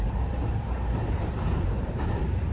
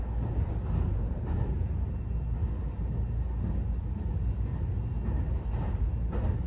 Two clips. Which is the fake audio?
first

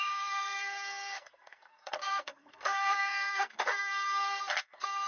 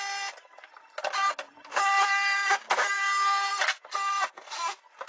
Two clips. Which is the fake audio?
first